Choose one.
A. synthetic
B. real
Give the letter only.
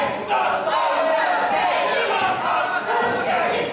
B